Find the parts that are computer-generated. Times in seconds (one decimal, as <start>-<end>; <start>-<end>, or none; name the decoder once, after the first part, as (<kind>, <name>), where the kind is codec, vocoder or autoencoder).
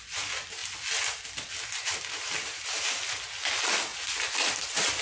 3.9-5.0 (vocoder, BigVGAN v2)